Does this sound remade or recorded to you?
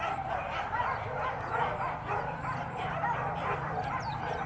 remade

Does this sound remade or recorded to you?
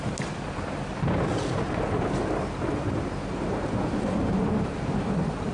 recorded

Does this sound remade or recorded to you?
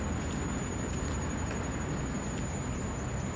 recorded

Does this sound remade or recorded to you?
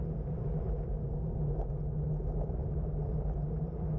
recorded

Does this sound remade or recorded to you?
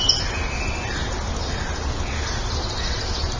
recorded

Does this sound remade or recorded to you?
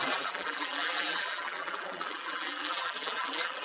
remade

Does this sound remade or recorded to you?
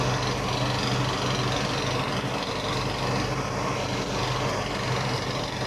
recorded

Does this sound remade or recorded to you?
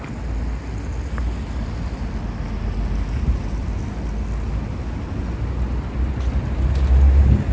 recorded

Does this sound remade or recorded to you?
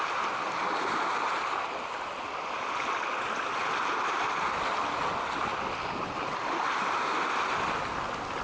recorded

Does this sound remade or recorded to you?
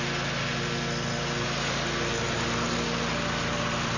recorded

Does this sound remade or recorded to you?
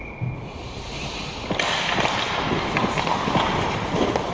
recorded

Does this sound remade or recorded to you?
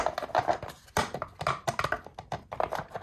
recorded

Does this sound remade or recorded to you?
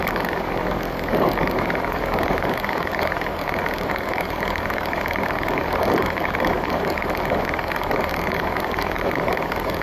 remade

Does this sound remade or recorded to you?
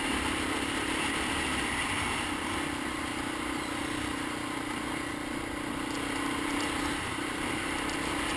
recorded